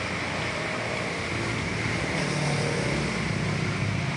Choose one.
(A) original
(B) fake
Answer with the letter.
A